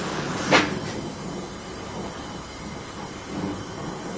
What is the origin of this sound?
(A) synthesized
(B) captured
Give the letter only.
B